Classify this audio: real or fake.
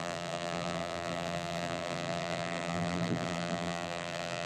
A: fake